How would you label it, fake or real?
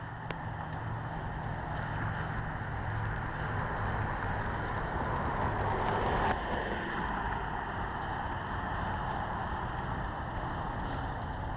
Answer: real